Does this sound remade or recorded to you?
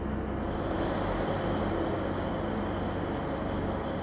recorded